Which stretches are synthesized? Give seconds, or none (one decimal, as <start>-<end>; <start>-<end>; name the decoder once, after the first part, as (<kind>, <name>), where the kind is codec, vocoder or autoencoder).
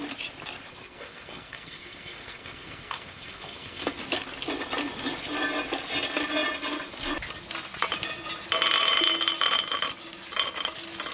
0.8-4.0 (codec, SNAC)